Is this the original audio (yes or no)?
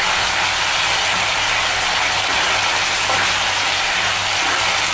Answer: yes